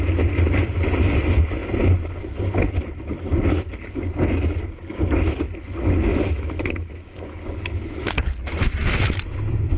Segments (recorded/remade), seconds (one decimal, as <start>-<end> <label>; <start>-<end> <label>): 0.0-6.1 recorded; 6.1-7.4 remade; 7.4-9.8 recorded